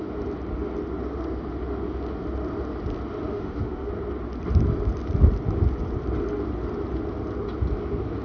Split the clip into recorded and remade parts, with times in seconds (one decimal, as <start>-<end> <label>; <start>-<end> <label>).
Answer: 0.0-3.3 recorded; 3.3-3.9 remade; 3.9-8.2 recorded